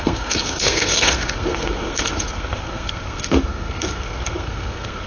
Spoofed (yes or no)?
yes